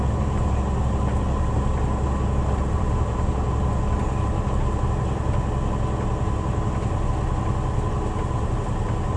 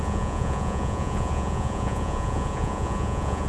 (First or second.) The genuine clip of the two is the first